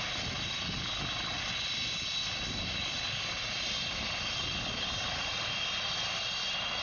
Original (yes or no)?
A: yes